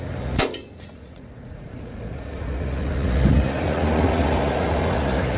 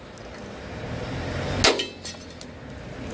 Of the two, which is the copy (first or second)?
first